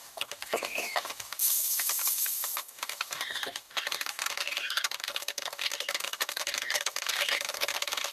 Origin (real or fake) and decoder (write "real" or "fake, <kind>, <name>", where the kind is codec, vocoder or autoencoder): fake, codec, DAC